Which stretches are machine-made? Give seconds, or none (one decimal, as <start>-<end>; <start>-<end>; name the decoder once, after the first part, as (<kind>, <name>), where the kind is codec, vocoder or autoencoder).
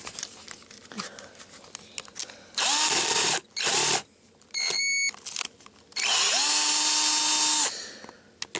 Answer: 2.2-6.2 (vocoder, BigVGAN v2)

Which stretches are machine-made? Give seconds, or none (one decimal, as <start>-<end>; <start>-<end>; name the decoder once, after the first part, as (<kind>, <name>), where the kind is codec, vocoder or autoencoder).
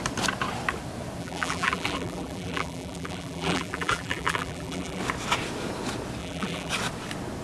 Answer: 1.2-5.0 (vocoder, BigVGAN v2); 6.2-6.7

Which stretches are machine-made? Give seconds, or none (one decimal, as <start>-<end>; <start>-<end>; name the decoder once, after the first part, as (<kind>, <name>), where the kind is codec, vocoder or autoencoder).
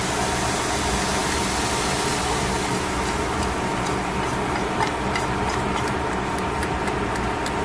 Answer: none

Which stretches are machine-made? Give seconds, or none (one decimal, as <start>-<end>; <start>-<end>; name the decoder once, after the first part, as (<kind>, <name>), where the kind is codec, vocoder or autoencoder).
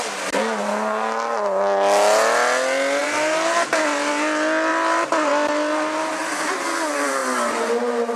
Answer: 3.0-4.1 (vocoder, BigVGAN v2); 4.7-5.3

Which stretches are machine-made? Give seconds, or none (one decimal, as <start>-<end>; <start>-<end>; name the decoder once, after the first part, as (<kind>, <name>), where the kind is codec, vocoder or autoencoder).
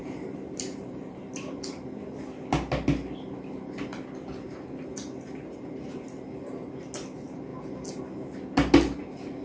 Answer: 0.0-1.2 (vocoder, BigVGAN v2)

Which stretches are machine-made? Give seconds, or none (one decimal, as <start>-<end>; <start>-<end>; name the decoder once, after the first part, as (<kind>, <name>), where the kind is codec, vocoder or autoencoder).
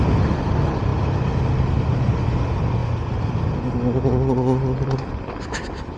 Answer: none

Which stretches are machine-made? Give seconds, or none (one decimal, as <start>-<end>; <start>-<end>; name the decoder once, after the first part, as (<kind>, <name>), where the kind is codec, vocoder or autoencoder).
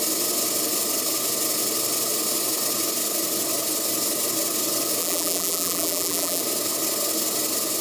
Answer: 5.0-6.4 (vocoder, BigVGAN v2)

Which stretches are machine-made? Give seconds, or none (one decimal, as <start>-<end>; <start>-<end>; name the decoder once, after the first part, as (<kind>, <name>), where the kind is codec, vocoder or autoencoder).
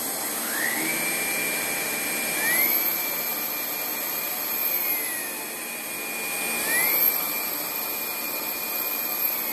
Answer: 3.9-4.6 (vocoder, BigVGAN v2); 7.1-7.7